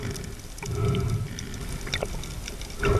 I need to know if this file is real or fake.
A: real